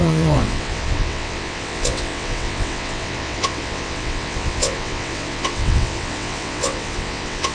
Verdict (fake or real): fake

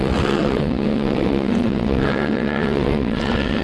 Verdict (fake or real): fake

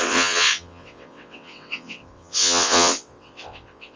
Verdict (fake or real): fake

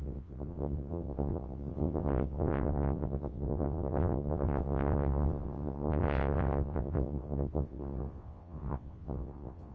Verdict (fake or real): fake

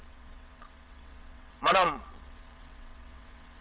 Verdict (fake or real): fake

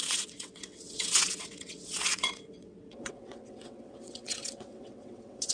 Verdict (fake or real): fake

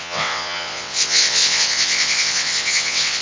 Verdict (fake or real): fake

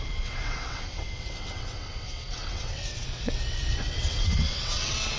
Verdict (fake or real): fake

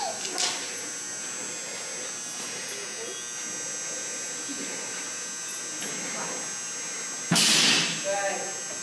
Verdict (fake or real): real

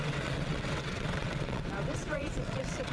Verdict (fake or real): fake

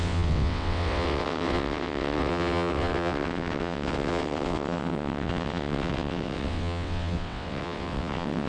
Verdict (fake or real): fake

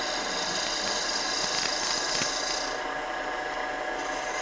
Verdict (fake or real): real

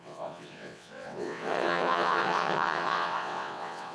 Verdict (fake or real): fake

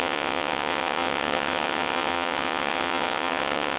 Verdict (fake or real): fake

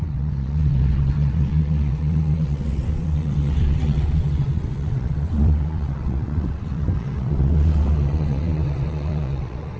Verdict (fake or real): fake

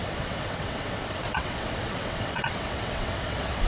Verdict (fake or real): fake